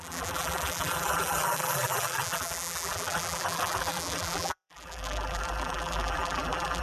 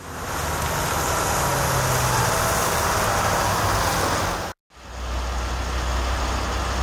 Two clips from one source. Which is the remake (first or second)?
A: first